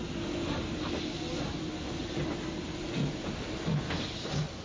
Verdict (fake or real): real